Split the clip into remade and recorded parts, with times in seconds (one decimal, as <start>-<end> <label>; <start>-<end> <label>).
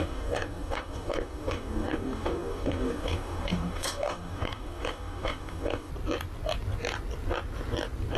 0.0-5.9 remade; 5.9-8.2 recorded